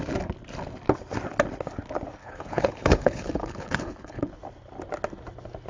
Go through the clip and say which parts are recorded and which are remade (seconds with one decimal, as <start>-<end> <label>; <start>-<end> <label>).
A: 0.0-2.2 recorded; 2.2-4.3 remade; 4.3-5.7 recorded